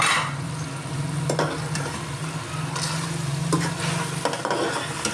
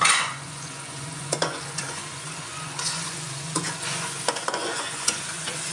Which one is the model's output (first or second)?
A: second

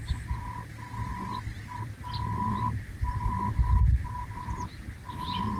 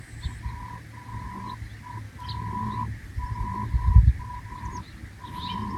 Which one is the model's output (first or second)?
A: first